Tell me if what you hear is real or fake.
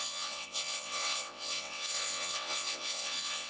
fake